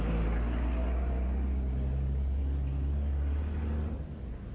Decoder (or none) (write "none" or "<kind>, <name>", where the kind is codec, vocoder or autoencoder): none